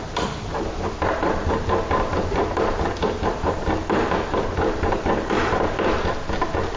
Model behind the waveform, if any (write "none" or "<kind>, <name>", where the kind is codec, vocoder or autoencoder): none